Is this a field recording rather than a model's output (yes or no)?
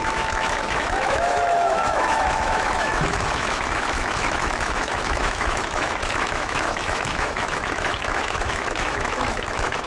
no